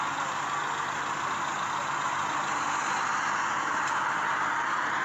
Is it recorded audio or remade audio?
recorded